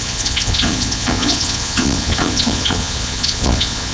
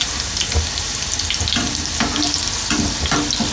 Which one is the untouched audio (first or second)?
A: second